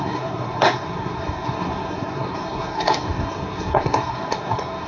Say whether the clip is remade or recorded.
remade